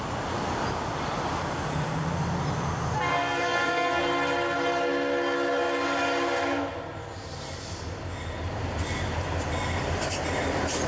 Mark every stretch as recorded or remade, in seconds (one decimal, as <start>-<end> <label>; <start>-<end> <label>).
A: 0.0-3.1 recorded; 3.1-4.0 remade; 4.0-10.9 recorded